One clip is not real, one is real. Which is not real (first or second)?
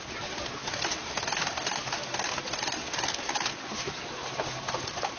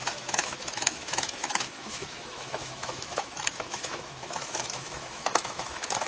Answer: second